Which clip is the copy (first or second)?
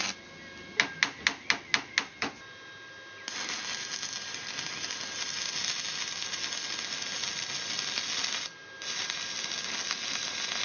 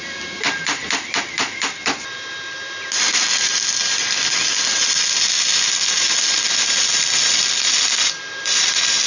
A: second